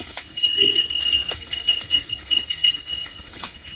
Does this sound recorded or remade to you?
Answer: remade